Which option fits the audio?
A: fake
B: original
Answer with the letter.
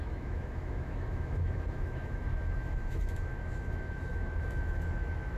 A